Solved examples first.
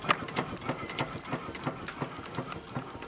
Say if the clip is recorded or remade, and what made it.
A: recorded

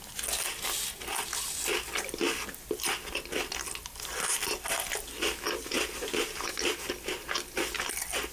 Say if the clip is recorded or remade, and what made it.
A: recorded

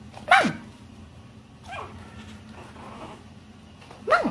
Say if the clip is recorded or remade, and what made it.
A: recorded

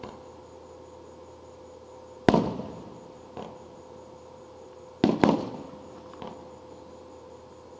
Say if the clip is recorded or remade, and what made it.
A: recorded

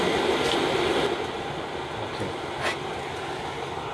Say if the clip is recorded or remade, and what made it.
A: recorded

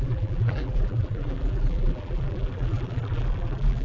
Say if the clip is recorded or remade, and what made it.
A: remade, vocoder, BigVGAN v2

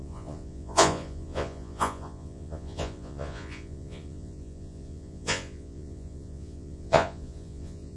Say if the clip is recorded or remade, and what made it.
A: remade, vocoder, Vocos